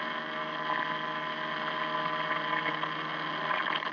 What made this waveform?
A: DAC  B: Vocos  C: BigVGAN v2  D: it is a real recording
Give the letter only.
D